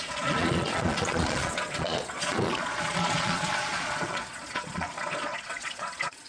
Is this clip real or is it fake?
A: fake